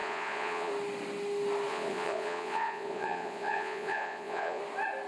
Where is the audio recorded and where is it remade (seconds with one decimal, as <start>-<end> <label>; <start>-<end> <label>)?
0.0-0.7 remade; 0.7-1.7 recorded; 1.7-4.6 remade; 4.6-5.1 recorded